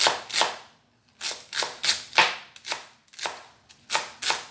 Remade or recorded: recorded